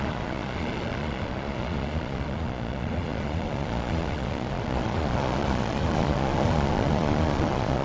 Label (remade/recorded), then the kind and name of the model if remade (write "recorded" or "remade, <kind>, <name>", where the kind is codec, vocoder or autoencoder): remade, vocoder, Vocos